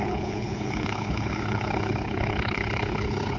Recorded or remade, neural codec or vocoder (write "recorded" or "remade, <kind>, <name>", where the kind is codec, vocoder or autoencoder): remade, codec, HILCodec